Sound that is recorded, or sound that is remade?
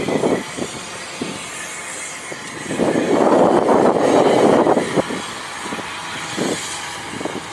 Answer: recorded